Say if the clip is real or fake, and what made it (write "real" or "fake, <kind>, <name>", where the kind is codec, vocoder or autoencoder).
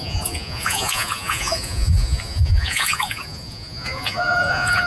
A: fake, vocoder, Vocos